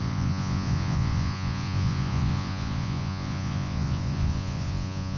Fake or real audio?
fake